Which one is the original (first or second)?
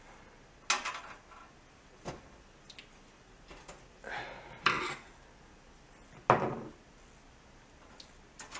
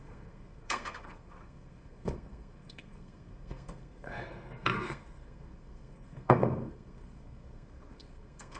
first